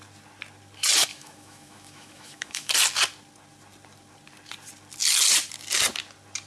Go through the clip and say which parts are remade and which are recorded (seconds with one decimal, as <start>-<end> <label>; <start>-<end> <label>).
0.0-1.1 recorded; 1.1-2.7 remade; 2.7-6.5 recorded